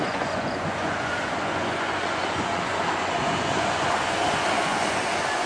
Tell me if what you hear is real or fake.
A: fake